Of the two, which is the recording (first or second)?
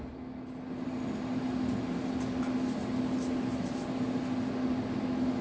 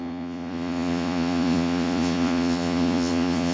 first